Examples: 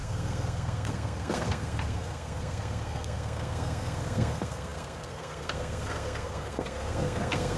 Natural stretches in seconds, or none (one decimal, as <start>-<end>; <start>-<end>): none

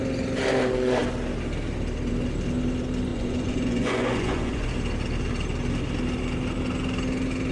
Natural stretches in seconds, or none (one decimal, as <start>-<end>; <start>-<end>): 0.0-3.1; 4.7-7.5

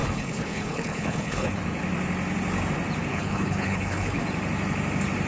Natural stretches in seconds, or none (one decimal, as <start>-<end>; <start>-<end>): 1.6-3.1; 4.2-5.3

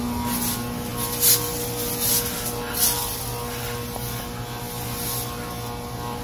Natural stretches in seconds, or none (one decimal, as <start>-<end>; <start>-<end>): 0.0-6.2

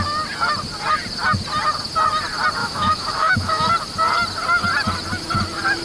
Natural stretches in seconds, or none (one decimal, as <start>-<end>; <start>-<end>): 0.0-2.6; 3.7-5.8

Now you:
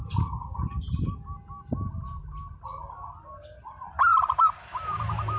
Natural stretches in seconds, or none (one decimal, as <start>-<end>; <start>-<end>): 0.0-5.4